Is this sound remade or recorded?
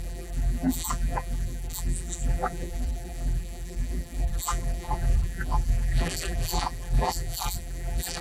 remade